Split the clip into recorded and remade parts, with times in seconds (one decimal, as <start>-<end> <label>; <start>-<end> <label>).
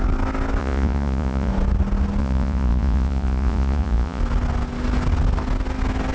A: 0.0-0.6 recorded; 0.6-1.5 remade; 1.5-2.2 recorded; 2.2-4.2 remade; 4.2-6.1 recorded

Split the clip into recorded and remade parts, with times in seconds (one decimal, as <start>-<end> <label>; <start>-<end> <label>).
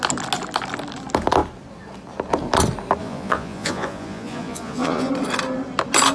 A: 0.0-3.0 recorded; 3.0-5.1 remade; 5.1-6.1 recorded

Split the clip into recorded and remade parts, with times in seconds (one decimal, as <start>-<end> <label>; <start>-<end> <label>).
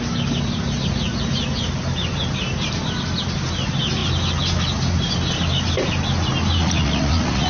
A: 0.0-6.6 recorded; 6.6-7.5 remade